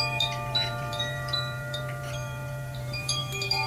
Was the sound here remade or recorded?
remade